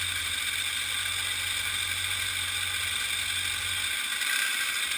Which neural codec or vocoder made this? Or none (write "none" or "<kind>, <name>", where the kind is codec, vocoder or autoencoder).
none